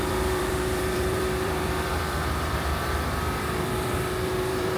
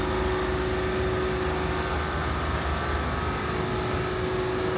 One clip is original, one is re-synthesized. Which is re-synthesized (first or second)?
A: first